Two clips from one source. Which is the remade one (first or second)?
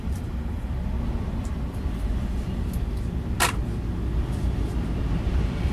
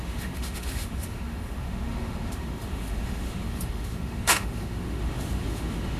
second